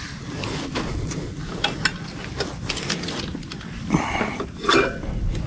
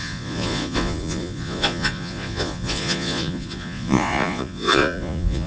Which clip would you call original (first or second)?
first